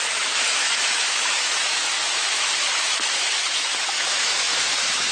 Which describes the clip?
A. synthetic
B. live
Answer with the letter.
A